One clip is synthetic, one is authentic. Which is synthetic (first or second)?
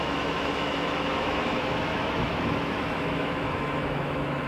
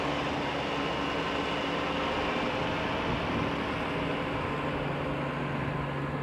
first